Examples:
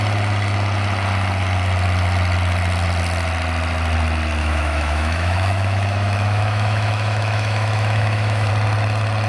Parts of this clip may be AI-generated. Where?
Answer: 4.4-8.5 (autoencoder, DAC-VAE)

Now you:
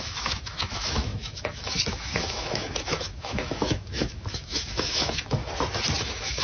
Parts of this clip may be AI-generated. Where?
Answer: 0.0-5.4 (autoencoder, DAC-VAE); 6.0-6.4

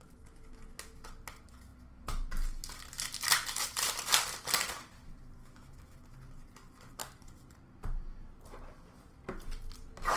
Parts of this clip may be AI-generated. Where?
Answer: 5.4-6.0 (autoencoder, DAC-VAE)